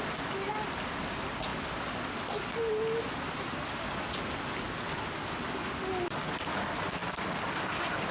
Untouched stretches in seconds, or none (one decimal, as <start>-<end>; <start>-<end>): 0.0-8.1